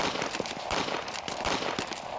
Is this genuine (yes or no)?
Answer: yes